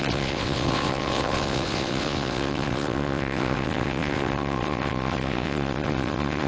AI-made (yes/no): yes